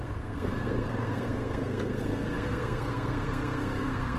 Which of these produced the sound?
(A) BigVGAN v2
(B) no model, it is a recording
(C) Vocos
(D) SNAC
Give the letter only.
D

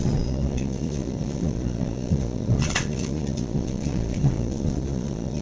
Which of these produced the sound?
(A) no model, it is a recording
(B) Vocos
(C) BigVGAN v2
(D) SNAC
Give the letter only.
B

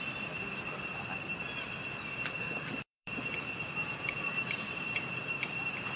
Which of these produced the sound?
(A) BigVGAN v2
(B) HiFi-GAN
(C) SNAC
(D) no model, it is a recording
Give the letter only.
A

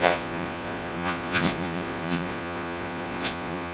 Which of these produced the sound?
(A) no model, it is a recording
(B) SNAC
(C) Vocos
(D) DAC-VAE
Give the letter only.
C